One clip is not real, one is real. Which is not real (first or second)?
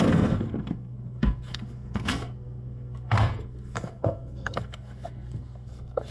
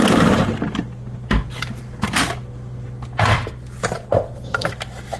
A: first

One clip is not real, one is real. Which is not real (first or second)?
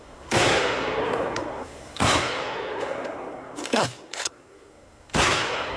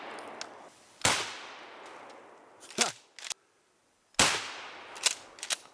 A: first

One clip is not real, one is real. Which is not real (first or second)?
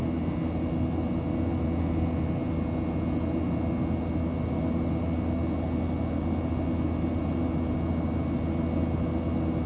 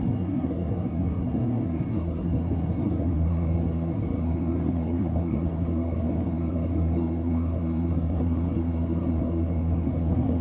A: second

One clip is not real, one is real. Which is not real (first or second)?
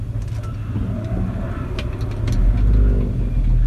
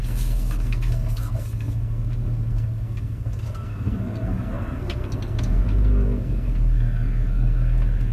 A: second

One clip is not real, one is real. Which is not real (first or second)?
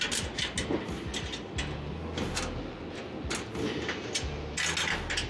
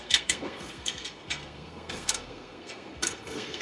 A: second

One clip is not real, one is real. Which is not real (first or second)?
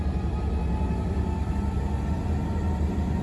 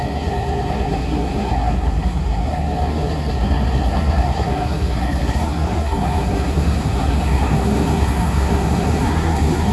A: second